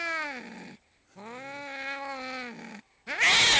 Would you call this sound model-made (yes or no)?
no